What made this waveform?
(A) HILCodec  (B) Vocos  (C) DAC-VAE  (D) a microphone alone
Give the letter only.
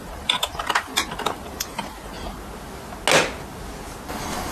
D